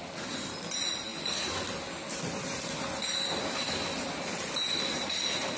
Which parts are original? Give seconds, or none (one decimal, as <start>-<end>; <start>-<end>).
0.0-5.6

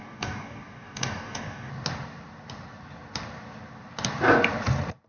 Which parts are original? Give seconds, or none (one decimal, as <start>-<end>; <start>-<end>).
1.7-5.1

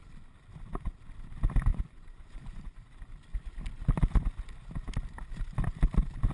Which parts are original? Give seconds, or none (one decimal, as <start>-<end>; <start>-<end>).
0.0-1.7; 2.9-6.3

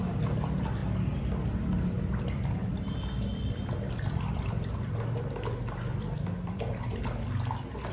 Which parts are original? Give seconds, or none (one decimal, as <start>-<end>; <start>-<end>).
0.0-3.3; 4.7-5.9; 6.8-7.9